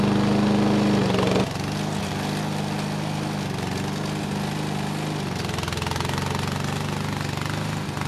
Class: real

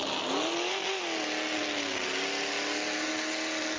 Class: real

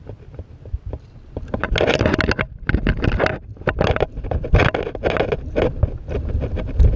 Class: real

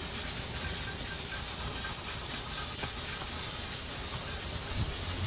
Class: real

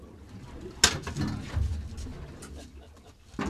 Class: real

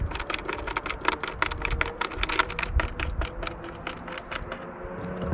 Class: real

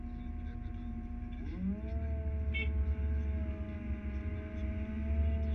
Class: real